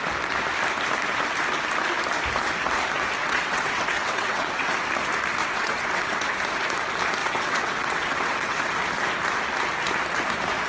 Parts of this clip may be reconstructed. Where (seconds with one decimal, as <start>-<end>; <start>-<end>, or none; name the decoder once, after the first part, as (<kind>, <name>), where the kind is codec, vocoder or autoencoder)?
3.2-4.7 (vocoder, WaveNeXt); 5.4-6.3; 7.2-8.7